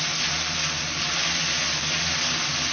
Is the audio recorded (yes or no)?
yes